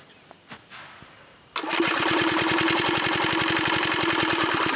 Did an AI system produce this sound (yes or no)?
no